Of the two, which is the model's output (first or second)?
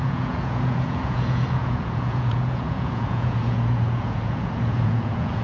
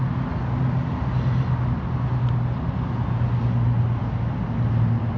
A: first